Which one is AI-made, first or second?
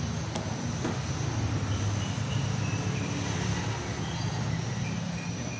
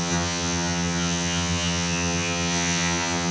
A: second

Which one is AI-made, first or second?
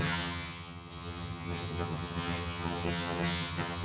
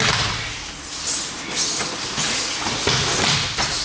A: first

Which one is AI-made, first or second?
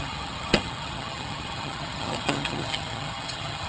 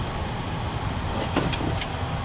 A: first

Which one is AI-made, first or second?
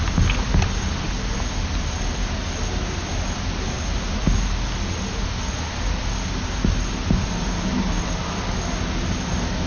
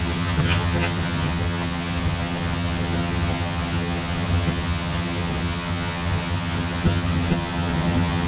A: second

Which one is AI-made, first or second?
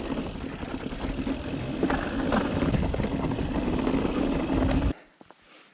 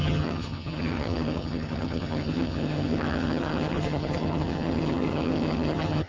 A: second